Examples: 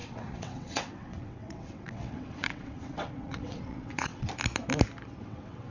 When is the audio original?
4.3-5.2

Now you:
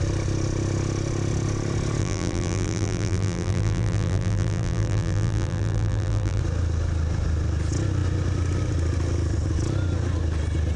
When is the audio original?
0.0-2.0; 6.4-10.8

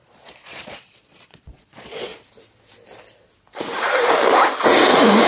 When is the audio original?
2.1-5.3

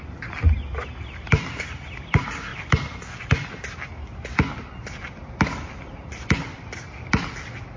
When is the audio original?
0.0-7.8

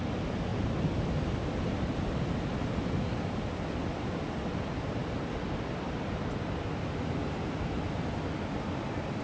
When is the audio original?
0.0-9.2

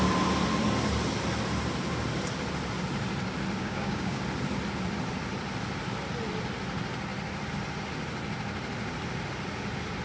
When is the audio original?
0.0-3.6; 4.2-10.0

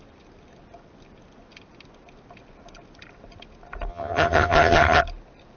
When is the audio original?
0.0-3.9; 5.0-5.6

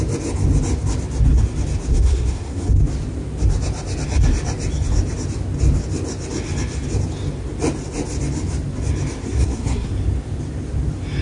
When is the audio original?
0.0-1.9; 2.7-9.2; 9.9-11.2